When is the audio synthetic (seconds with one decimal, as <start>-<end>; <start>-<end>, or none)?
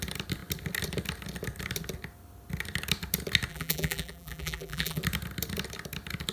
3.5-5.0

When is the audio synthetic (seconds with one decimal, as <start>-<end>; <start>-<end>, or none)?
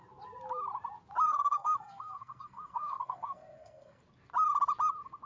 1.3-4.0